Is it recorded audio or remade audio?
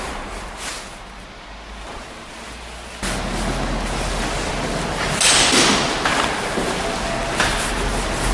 recorded